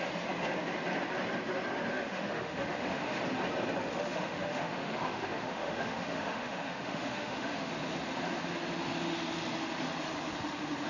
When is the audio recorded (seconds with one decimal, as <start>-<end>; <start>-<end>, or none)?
0.0-1.9; 3.2-3.9; 7.7-10.9